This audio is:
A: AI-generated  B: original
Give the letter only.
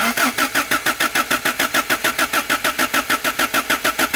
B